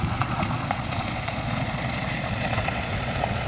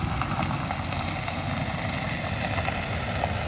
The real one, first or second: second